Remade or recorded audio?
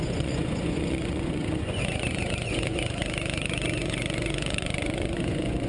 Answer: remade